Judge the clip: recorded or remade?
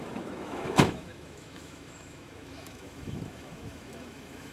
remade